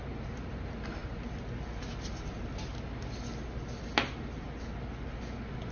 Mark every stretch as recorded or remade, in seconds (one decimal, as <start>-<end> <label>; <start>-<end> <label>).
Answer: 0.0-5.7 recorded